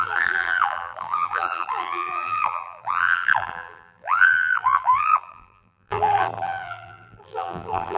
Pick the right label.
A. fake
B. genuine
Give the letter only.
A